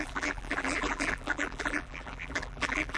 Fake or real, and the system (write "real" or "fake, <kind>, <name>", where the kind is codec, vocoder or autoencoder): fake, vocoder, BigVGAN v2